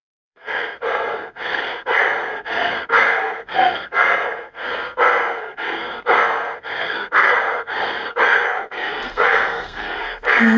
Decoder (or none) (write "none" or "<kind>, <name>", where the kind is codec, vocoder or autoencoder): codec, SNAC